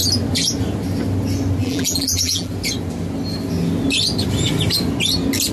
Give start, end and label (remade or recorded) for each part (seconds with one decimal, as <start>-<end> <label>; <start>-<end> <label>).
0.0-1.6 recorded; 1.6-2.5 remade; 2.5-5.5 recorded